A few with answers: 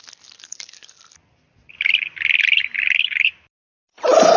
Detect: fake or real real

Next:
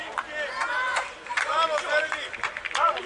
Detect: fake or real real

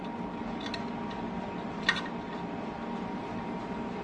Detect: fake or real real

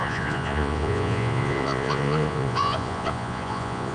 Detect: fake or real fake